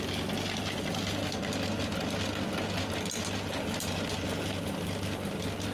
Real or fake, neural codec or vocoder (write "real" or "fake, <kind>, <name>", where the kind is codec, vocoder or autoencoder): real